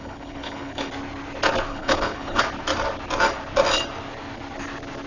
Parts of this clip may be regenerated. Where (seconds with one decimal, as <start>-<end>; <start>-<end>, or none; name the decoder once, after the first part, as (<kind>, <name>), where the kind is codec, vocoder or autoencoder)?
0.0-0.9 (codec, HILCodec); 1.7-2.4